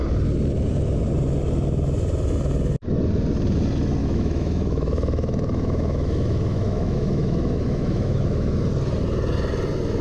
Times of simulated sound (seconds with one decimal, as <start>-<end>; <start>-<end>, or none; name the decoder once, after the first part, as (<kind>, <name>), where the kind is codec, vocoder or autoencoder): 4.0-8.6 (autoencoder, DAC-VAE)